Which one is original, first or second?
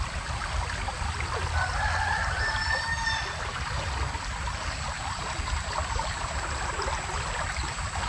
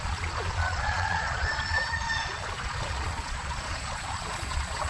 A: first